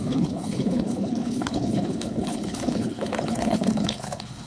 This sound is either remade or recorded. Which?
remade